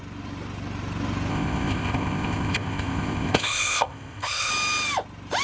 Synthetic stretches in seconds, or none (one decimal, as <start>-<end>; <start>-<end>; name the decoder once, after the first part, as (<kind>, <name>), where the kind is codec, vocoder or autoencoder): 1.3-4.5 (codec, ZipCodec)